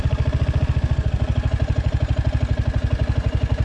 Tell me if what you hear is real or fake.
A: real